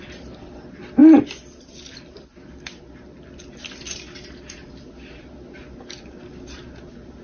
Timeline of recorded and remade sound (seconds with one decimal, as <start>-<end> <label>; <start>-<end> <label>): 0.0-7.2 recorded

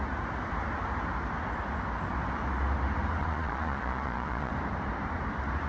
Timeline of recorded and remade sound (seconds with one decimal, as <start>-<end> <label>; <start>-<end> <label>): 0.0-3.2 recorded; 3.2-4.5 remade; 4.5-5.7 recorded

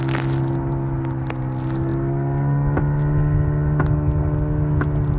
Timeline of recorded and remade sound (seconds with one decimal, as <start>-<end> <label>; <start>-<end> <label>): 0.0-5.2 recorded

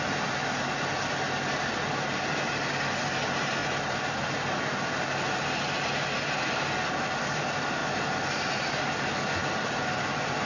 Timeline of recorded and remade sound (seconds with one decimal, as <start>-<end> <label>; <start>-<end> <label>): 0.0-3.6 recorded; 3.6-4.7 remade; 4.7-9.4 recorded; 9.4-10.5 remade

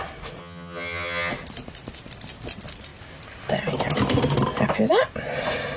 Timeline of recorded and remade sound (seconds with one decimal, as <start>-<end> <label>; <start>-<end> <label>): 0.0-0.4 recorded; 0.4-1.3 remade; 1.3-5.8 recorded